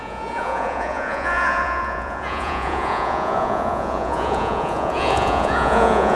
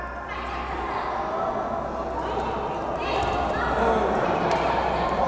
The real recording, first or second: second